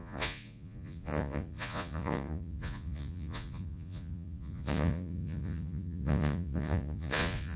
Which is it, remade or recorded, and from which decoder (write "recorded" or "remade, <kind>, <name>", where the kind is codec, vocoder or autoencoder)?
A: remade, vocoder, Vocos